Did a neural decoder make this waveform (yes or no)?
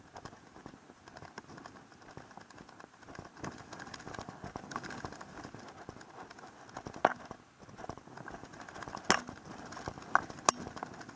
no